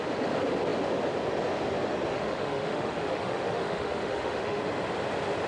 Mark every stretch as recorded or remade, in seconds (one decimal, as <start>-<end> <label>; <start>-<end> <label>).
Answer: 0.0-2.1 recorded; 2.1-4.6 remade; 4.6-5.5 recorded